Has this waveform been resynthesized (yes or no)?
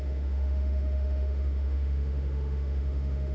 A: yes